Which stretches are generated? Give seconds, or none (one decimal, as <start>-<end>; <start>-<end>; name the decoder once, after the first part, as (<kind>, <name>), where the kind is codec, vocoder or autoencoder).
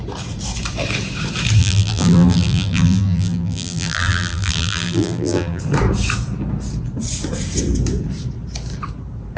1.6-5.6 (vocoder, BigVGAN v2)